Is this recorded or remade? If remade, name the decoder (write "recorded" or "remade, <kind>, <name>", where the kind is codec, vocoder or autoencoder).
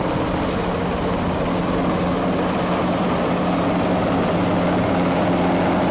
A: recorded